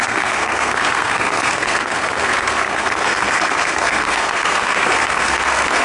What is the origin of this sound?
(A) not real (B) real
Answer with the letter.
A